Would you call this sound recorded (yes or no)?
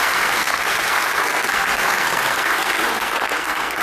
no